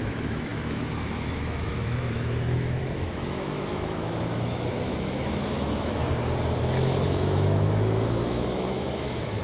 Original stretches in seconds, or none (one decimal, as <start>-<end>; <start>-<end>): 6.0-6.6